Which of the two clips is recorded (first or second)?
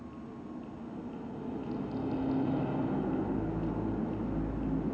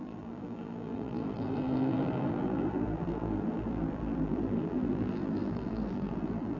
first